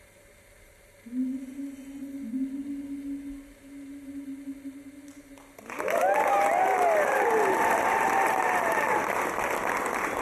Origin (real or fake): real